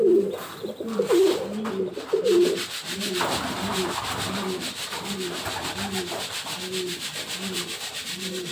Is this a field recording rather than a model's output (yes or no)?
no